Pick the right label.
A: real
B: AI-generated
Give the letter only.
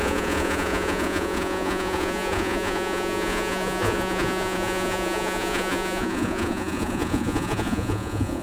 B